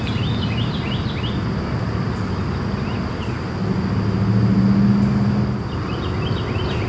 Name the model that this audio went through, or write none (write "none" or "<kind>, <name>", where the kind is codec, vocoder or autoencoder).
none